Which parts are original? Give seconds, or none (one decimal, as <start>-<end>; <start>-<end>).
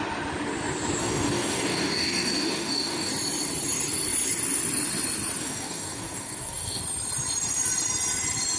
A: 0.0-1.0; 3.1-5.4; 6.8-8.6